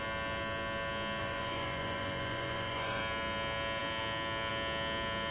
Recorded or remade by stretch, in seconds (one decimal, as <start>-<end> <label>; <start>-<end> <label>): 0.0-1.2 recorded; 1.2-3.0 remade; 3.0-5.3 recorded